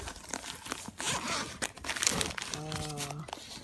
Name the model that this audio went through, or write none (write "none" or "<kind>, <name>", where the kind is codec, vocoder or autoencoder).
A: none